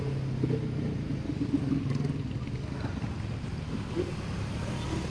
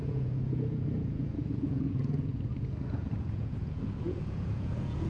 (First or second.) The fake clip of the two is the second